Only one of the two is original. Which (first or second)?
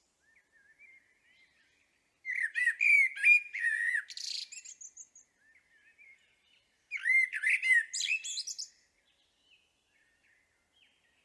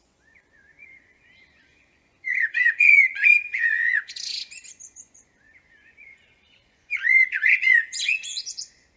first